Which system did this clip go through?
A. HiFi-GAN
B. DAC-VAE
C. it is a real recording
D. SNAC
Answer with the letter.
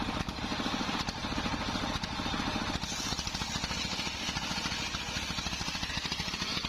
C